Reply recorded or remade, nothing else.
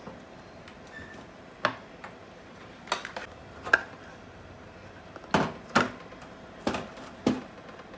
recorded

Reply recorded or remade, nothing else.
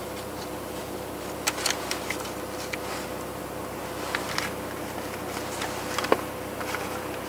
recorded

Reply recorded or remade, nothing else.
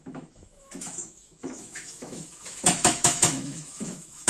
remade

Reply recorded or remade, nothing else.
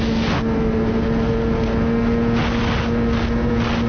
recorded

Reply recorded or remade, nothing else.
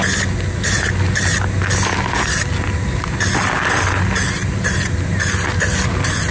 recorded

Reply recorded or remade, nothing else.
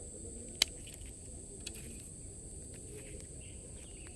recorded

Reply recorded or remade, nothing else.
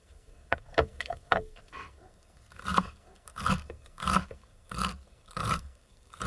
remade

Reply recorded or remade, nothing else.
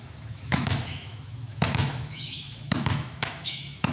remade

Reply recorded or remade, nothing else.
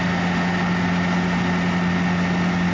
recorded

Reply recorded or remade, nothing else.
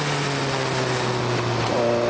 recorded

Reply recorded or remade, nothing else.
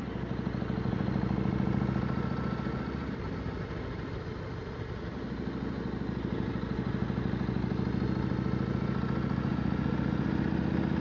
recorded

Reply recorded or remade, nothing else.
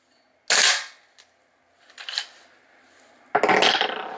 recorded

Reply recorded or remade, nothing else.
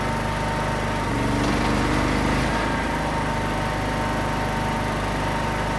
recorded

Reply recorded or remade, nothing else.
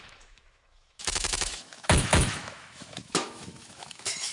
remade